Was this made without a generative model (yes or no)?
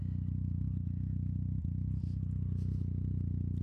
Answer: yes